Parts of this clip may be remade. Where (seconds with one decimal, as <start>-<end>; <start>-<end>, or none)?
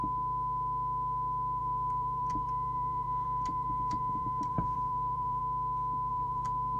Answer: 1.6-5.4; 6.1-6.8